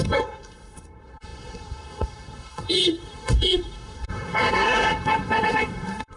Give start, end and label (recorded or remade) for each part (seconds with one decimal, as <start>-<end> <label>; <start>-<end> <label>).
0.0-6.2 remade